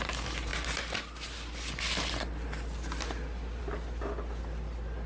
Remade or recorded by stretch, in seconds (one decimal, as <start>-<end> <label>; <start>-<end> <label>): 0.0-5.1 recorded